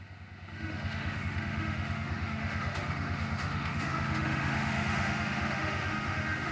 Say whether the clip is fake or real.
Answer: fake